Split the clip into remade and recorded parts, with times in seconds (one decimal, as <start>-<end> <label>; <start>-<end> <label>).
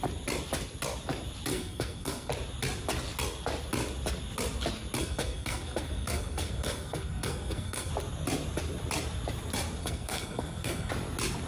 0.0-1.5 recorded; 1.5-2.3 remade; 2.3-5.0 recorded; 5.0-7.9 remade; 7.9-9.8 recorded; 9.8-10.9 remade; 10.9-11.5 recorded